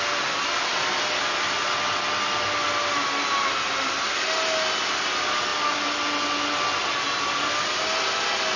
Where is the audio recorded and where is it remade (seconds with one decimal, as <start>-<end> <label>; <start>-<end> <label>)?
0.0-8.6 recorded